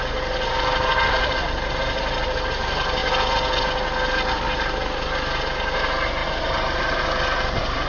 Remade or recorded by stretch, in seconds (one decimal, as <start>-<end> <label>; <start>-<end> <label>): 0.0-7.9 recorded